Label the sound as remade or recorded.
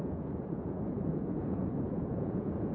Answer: remade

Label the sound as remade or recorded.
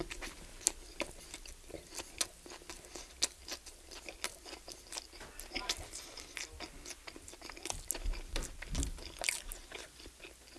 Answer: recorded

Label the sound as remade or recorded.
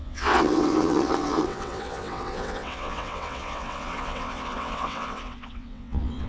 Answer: remade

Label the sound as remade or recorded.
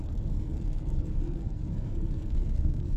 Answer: remade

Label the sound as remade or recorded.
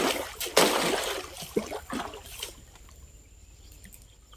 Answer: recorded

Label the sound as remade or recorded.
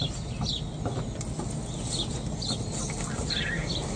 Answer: recorded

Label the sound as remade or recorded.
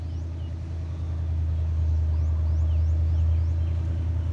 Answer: recorded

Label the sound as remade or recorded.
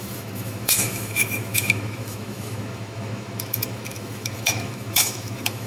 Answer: remade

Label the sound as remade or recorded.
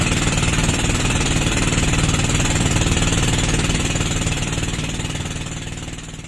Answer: remade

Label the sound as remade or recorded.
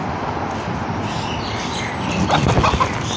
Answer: recorded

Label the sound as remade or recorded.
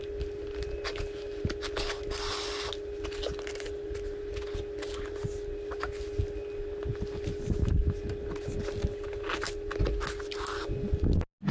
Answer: recorded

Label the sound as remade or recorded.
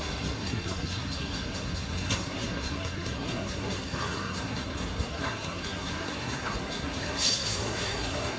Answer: remade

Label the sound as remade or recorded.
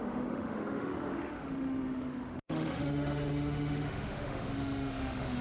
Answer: remade